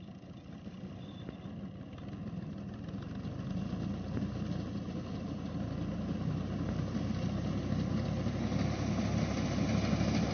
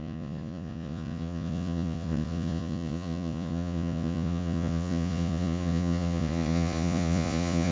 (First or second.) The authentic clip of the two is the first